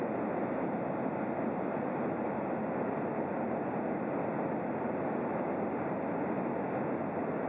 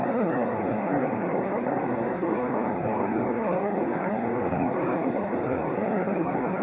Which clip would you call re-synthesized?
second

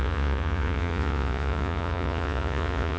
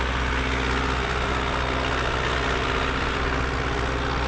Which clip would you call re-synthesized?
first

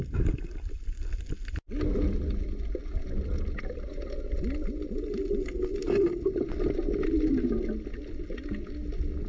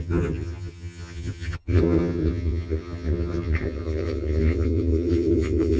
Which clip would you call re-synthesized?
second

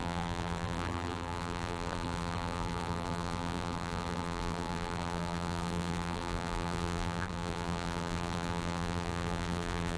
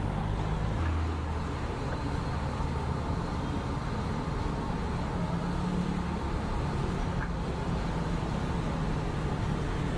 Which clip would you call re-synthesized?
first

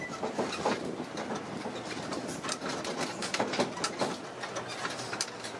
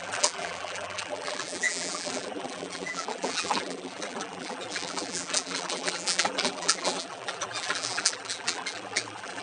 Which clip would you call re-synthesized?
second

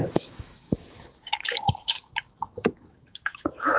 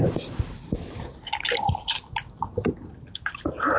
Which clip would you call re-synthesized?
first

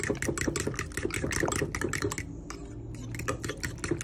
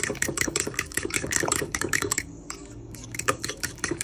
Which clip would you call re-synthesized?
second